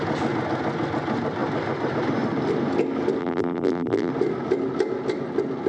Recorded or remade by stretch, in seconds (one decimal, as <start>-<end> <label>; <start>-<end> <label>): 0.0-3.2 recorded; 3.2-4.1 remade; 4.1-5.7 recorded